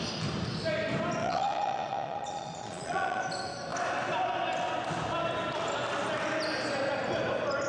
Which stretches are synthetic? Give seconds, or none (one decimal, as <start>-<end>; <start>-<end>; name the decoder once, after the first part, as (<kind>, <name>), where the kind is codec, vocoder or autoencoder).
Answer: 1.2-3.2 (vocoder, Vocos)